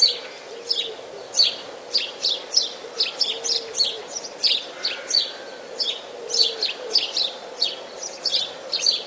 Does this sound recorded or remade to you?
recorded